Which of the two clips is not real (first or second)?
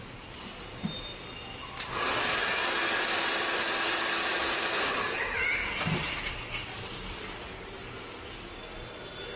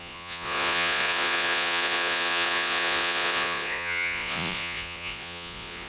second